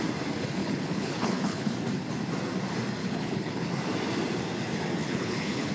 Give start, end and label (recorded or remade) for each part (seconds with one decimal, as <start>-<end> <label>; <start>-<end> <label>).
0.0-0.6 recorded; 0.6-1.7 remade; 1.7-3.0 recorded; 3.0-3.7 remade; 3.7-5.0 recorded; 5.0-5.7 remade

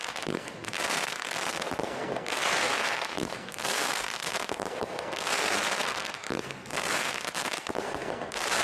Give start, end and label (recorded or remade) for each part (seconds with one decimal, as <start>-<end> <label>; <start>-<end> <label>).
0.0-8.6 remade

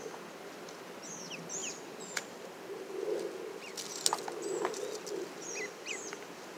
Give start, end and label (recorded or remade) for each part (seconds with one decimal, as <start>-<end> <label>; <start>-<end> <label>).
0.0-6.6 recorded